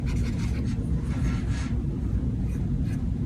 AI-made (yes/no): no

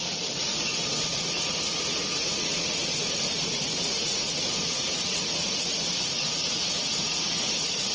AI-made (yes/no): yes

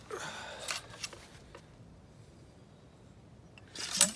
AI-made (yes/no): no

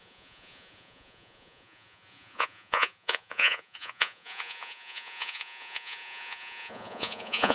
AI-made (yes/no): yes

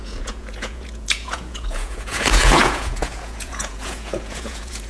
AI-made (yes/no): yes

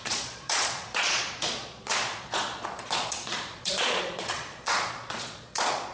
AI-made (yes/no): yes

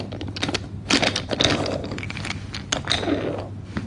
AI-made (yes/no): no